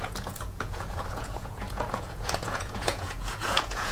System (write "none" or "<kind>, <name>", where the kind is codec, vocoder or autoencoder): vocoder, Vocos